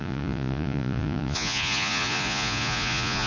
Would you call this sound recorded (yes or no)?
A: no